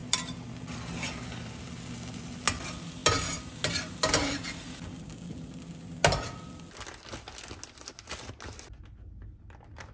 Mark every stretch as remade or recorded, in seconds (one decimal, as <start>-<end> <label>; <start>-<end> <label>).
0.0-9.9 recorded